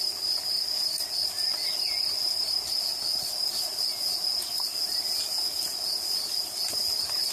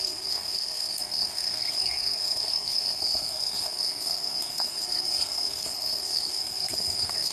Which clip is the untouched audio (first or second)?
first